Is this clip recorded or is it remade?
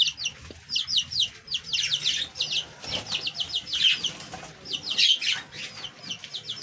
recorded